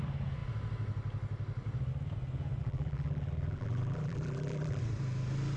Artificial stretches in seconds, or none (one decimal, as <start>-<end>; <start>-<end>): 2.6-4.8